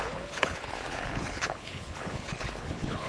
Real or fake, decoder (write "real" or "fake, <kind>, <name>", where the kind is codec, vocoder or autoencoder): fake, codec, HILCodec